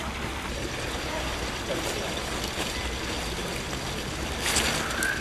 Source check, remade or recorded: recorded